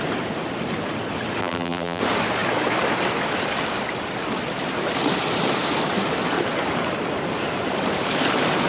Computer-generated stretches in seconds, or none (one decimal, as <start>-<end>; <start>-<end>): 1.4-2.0